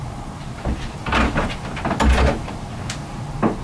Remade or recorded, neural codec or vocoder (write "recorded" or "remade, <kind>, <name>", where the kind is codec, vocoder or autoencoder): recorded